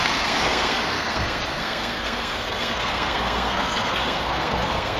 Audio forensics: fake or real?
fake